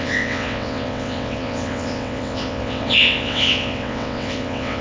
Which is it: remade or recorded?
remade